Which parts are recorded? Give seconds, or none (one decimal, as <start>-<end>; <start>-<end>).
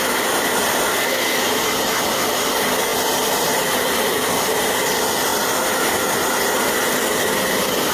0.0-0.9; 1.4-7.9